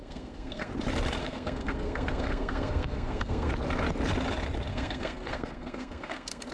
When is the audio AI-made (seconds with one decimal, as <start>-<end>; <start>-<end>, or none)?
0.0-0.7; 1.2-3.5; 4.7-6.5